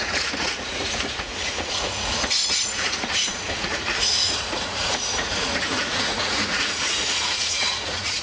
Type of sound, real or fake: fake